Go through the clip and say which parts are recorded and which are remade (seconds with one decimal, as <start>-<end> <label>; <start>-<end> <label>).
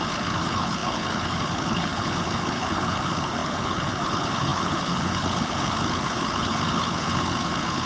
0.0-7.9 remade